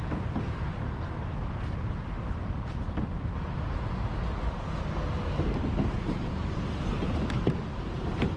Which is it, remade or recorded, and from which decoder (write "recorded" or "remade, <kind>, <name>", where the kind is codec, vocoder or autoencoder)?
recorded